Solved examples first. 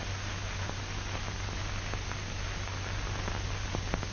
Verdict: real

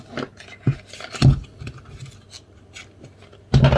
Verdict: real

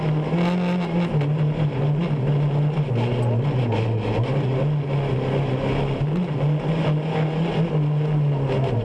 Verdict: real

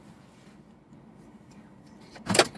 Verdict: real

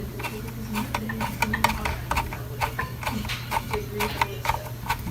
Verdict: real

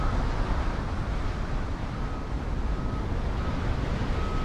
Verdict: real